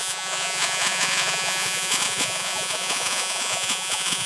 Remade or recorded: remade